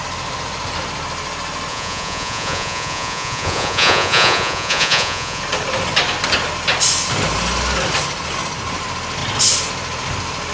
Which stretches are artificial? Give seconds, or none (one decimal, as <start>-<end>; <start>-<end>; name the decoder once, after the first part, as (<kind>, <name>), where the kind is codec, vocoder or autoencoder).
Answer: 1.7-5.4 (vocoder, Vocos)